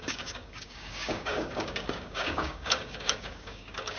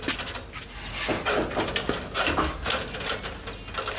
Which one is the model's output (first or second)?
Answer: first